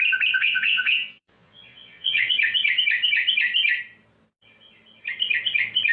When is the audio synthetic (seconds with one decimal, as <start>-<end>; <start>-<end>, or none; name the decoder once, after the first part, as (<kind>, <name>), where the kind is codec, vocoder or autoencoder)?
0.4-2.3 (vocoder, Vocos)